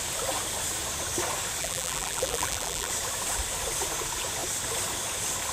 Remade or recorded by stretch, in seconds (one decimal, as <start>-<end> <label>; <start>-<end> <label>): 0.0-1.6 recorded; 1.6-2.9 remade; 2.9-5.5 recorded